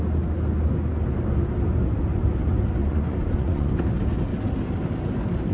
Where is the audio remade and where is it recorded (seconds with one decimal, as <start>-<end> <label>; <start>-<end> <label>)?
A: 0.0-2.8 recorded; 2.8-3.7 remade; 3.7-5.5 recorded